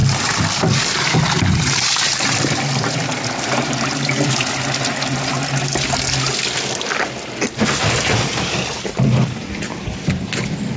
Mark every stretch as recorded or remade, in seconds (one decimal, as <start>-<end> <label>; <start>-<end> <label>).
0.0-4.3 remade; 4.3-10.8 recorded